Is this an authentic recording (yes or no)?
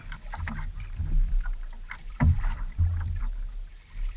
no